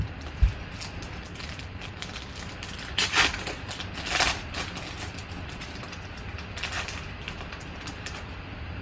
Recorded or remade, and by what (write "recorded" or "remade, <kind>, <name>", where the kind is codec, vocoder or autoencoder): recorded